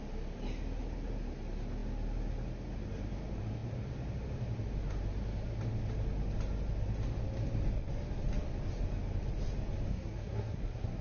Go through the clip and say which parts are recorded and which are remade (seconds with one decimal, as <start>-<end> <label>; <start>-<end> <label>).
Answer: 0.0-9.9 recorded; 9.9-11.0 remade